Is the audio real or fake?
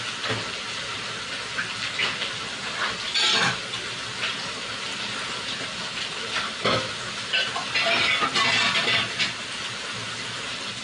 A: real